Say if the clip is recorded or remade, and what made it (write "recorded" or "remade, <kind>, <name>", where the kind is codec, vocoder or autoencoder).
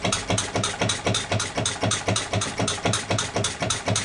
recorded